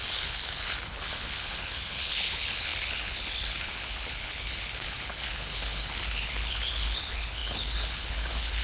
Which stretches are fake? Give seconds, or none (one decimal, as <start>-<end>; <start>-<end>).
0.0-8.6

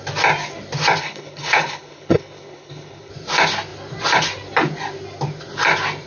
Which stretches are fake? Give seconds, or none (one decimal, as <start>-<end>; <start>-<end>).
1.0-3.1

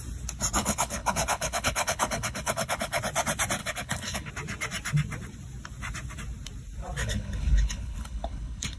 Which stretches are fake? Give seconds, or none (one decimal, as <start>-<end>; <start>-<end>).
0.6-3.0; 3.6-4.3; 7.0-8.8

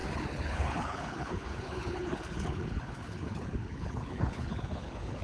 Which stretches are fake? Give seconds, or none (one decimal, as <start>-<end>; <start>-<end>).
0.0-5.2

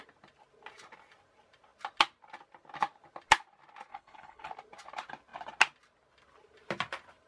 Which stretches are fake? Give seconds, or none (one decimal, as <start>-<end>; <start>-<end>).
3.9-4.5

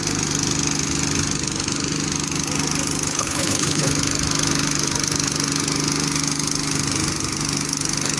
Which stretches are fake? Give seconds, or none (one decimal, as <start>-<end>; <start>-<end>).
3.1-3.9